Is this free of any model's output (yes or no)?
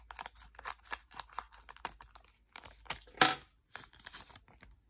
yes